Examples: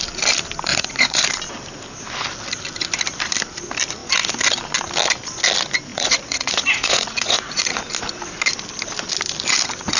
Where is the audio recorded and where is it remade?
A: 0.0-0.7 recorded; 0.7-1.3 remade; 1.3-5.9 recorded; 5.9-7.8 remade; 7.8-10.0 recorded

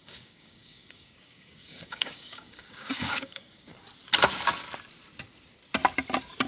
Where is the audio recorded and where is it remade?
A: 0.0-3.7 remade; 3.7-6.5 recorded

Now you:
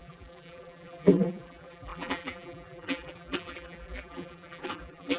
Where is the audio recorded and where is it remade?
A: 0.0-5.2 remade

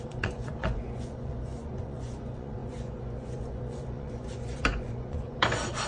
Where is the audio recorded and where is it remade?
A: 0.0-5.9 remade

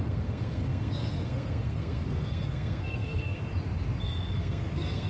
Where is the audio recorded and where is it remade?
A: 0.0-3.4 remade; 3.4-4.0 recorded; 4.0-5.1 remade